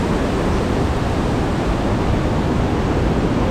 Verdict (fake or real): real